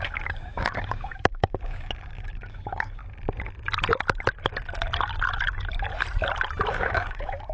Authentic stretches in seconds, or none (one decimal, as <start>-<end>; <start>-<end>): 3.0-6.7